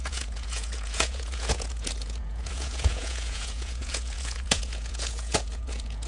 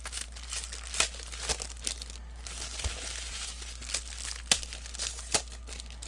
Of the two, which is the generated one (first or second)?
first